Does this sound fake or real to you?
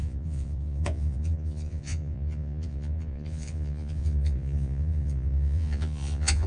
fake